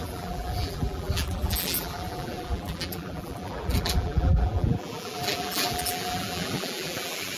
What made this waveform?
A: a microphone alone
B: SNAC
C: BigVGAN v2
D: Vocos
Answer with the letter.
C